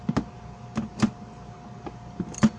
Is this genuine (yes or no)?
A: yes